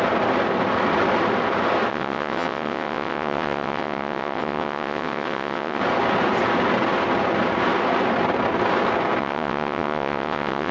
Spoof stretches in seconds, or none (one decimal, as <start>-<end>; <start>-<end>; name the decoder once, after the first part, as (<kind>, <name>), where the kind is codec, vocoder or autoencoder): 1.9-5.8 (vocoder, WaveNeXt); 9.2-10.7